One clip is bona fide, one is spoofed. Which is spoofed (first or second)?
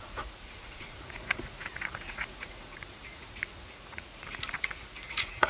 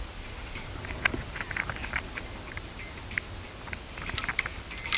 first